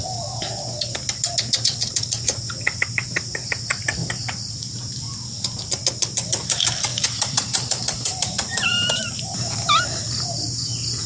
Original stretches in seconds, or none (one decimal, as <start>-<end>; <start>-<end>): 0.0-6.9; 10.0-11.1